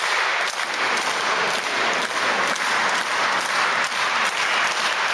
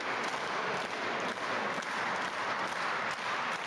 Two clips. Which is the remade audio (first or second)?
second